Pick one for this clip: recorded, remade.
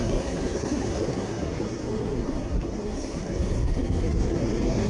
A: remade